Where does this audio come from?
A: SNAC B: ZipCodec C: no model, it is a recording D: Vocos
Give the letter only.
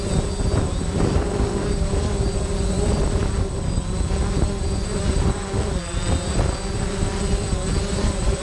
C